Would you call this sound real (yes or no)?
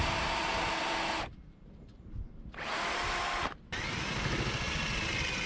yes